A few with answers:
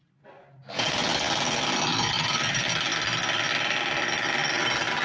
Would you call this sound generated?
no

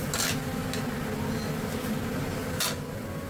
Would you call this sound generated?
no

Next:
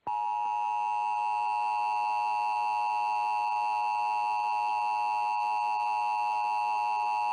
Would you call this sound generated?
no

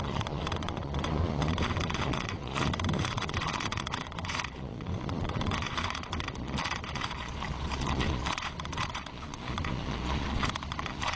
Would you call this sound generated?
yes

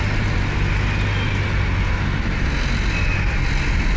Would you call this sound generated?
no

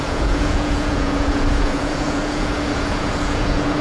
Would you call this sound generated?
yes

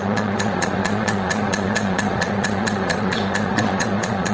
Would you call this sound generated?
yes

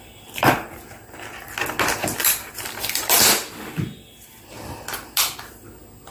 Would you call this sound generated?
no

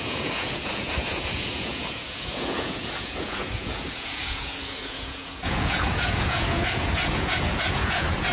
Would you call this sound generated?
yes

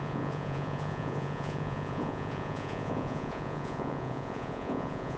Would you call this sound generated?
yes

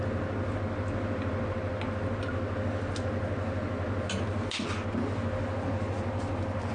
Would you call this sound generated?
no